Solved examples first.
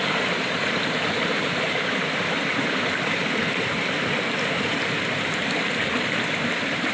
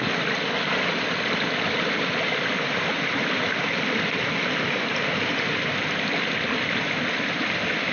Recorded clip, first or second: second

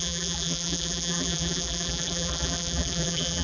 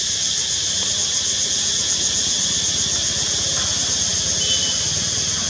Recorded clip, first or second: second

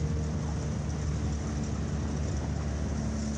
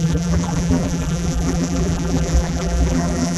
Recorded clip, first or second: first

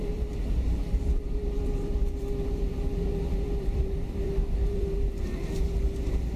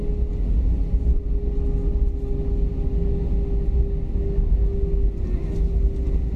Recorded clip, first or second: second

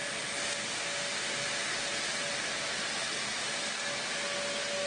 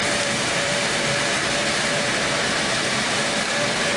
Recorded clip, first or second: first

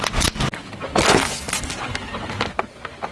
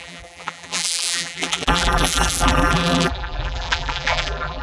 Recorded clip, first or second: first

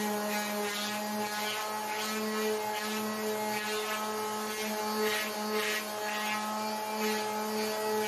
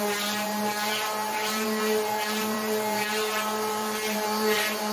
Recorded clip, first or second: first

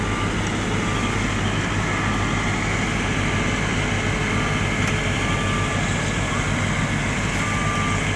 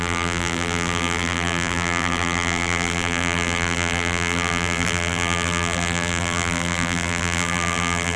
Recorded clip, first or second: first